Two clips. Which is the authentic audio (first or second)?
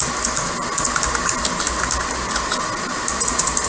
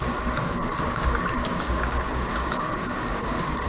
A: first